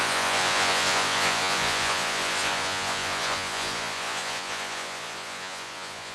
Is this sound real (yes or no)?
no